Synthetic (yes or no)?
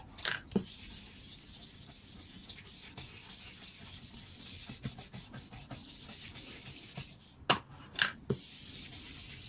no